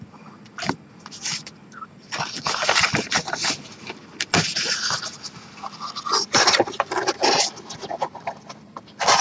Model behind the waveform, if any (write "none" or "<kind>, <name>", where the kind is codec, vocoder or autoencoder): none